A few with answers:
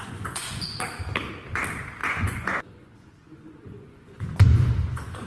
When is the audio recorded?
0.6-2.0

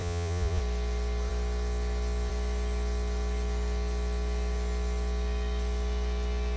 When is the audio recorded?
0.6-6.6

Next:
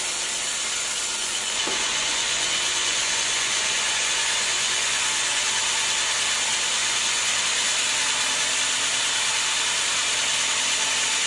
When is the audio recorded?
0.0-1.2; 5.5-6.8; 7.4-11.3

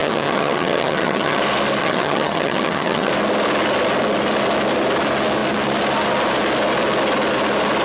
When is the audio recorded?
1.4-1.8; 3.1-7.8

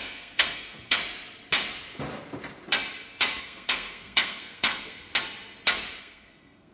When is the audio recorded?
1.0-3.4; 5.1-6.0

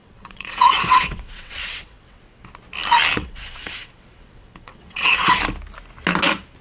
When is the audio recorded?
2.2-3.2; 5.4-6.6